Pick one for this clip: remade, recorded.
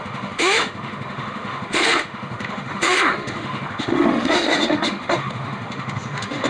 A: remade